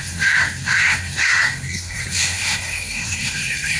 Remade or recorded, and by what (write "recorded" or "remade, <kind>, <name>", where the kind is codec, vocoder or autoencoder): remade, codec, SNAC